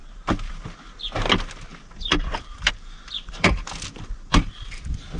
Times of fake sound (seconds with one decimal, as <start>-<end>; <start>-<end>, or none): 1.7-4.8

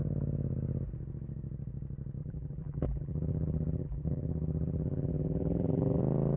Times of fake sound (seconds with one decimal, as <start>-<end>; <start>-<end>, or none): 2.2-6.0

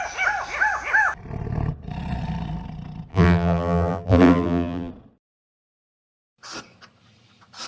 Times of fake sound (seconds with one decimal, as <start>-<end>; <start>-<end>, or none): 3.1-4.9

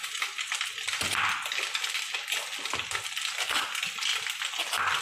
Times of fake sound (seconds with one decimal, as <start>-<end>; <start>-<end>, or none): 0.0-0.7

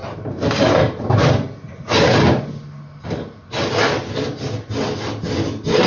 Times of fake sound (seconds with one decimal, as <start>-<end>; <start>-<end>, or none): 0.0-2.4